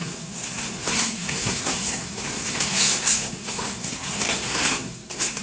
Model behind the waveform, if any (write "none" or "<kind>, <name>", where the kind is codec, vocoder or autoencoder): codec, SNAC